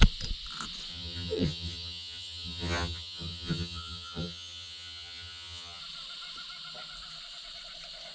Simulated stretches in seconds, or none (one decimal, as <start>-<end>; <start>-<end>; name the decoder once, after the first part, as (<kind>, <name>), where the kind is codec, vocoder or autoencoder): 0.9-5.8 (vocoder, HiFi-GAN)